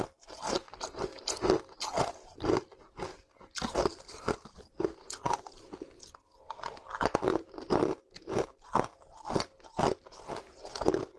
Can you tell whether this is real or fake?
real